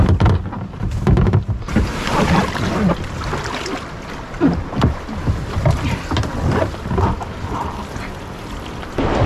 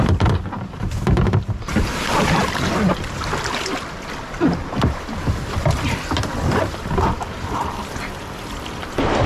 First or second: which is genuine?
first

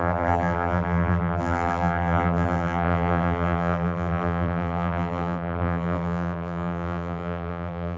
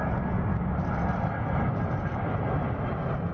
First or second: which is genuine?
second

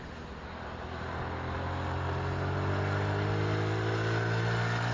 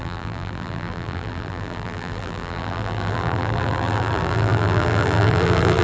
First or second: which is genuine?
first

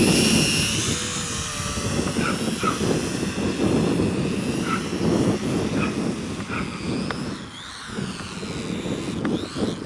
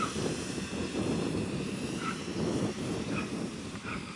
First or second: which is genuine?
first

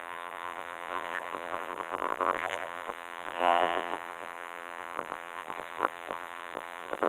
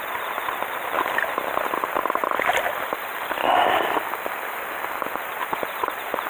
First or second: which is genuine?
second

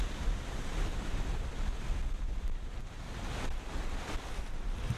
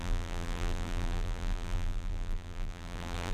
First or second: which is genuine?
first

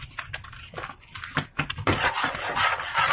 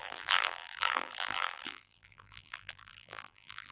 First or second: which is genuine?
first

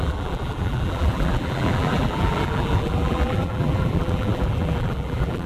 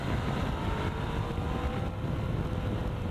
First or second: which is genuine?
second